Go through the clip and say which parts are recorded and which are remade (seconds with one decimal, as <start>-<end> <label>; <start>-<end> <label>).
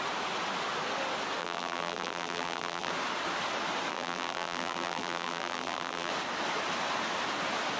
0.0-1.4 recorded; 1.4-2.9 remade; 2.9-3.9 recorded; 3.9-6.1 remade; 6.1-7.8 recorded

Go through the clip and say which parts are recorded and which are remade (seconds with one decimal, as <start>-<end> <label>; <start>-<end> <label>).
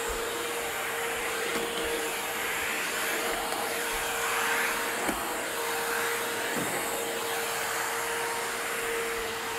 0.0-1.5 remade; 1.5-2.0 recorded; 2.0-4.0 remade; 4.0-9.2 recorded; 9.2-9.6 remade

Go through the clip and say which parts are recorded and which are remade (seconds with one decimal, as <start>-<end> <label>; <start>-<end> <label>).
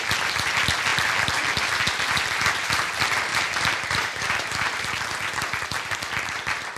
0.0-3.3 recorded; 3.3-5.0 remade; 5.0-6.8 recorded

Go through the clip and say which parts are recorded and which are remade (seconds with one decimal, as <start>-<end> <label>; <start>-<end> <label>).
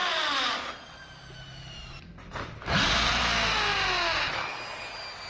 0.0-3.2 remade; 3.2-5.3 recorded